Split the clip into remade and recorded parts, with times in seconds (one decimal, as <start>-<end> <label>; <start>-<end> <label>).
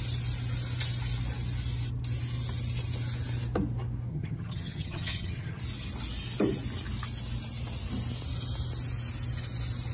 0.0-4.1 recorded; 4.1-5.6 remade; 5.6-9.9 recorded